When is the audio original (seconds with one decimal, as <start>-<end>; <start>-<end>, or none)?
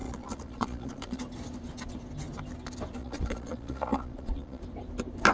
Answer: 1.2-3.0; 4.6-5.3